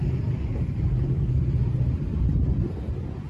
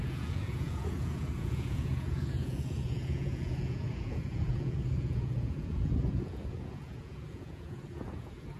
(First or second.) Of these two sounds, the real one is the first